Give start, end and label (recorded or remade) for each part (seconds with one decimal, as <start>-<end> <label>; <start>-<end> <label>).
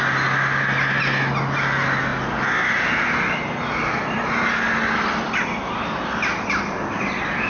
0.0-7.5 recorded